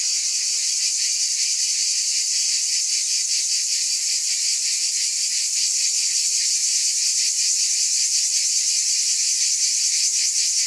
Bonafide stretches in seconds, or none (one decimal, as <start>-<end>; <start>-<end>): 0.0-5.6; 6.5-10.7